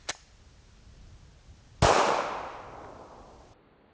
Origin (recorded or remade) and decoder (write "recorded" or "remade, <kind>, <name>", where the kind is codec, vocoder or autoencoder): recorded